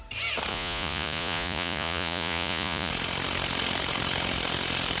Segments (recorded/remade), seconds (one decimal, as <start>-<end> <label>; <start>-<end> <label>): 0.0-0.5 recorded; 0.5-2.9 remade; 2.9-5.0 recorded

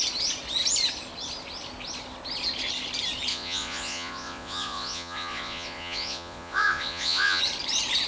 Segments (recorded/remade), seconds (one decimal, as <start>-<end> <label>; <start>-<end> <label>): 0.0-3.3 recorded; 3.3-7.4 remade; 7.4-8.1 recorded

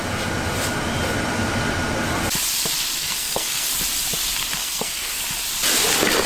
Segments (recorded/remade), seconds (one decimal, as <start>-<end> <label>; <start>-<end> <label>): 0.0-3.0 recorded; 3.0-3.7 remade; 3.7-4.6 recorded; 4.6-5.2 remade; 5.2-6.3 recorded

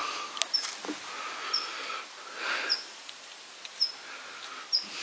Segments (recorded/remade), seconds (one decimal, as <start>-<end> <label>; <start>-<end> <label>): 0.0-5.0 recorded

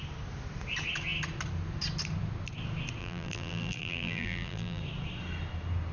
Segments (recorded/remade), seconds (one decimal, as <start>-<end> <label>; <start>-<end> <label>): 0.0-3.0 recorded; 3.0-4.8 remade; 4.8-5.9 recorded

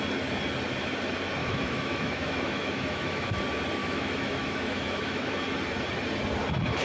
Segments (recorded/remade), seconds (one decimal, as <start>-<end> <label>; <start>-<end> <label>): 0.0-1.4 recorded; 1.4-3.4 remade; 3.4-3.8 recorded; 3.8-5.4 remade; 5.4-6.8 recorded

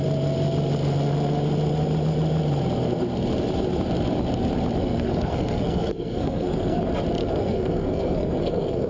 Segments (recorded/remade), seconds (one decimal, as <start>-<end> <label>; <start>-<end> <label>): 0.0-4.8 recorded; 4.8-6.8 remade; 6.8-7.2 recorded; 7.2-8.9 remade